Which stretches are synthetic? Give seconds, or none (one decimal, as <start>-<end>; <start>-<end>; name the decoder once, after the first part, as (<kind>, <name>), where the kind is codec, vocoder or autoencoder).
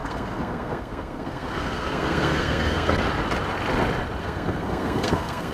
0.0-3.0 (codec, SNAC); 4.2-5.5